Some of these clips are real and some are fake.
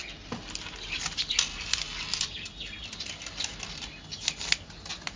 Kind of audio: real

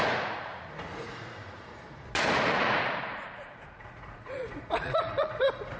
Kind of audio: fake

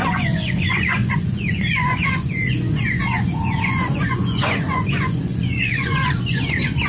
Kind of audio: fake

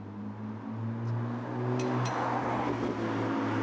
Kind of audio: real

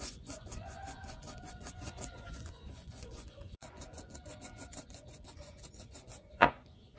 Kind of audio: fake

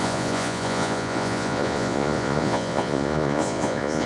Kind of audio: fake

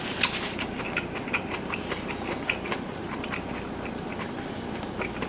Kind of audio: real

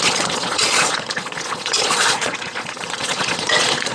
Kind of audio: fake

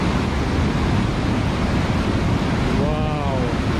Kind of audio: real